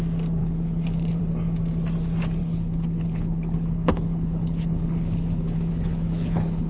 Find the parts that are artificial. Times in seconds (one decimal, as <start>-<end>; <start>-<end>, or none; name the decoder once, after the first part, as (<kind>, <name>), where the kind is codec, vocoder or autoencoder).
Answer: 0.4-1.2 (codec, HILCodec); 2.4-6.7